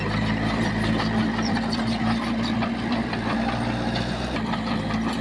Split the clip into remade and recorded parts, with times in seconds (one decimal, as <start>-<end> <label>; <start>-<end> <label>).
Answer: 0.0-5.2 remade